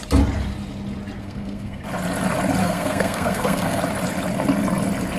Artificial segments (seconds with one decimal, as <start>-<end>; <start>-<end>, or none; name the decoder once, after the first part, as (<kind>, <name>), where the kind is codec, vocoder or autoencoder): 1.2-1.8 (codec, SNAC); 2.6-3.8